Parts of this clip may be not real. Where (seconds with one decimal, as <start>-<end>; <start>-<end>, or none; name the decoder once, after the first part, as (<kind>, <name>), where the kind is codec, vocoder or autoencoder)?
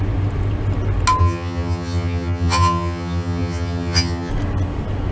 1.2-4.3 (vocoder, HiFi-GAN)